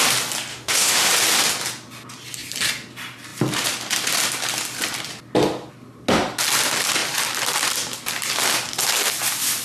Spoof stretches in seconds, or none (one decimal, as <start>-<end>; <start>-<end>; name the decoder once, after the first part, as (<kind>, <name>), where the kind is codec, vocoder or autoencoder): 0.5-1.1 (autoencoder, DAC-VAE)